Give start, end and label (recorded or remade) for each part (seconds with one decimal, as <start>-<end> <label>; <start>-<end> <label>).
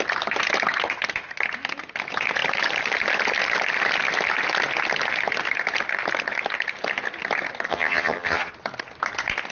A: 0.0-7.7 recorded; 7.7-8.5 remade; 8.5-9.5 recorded